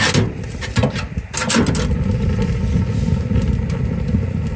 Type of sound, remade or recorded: recorded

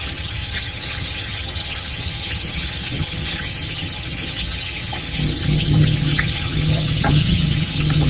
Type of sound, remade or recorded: remade